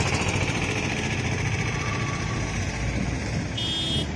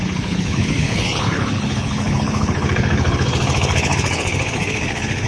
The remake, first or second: second